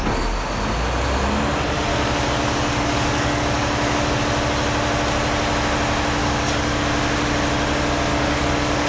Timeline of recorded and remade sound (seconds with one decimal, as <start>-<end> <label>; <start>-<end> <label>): 0.0-1.9 recorded; 1.9-4.2 remade; 4.2-6.2 recorded; 6.2-6.8 remade; 6.8-8.1 recorded; 8.1-8.9 remade